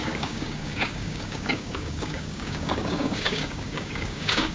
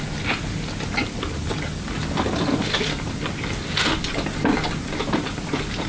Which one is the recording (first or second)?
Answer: second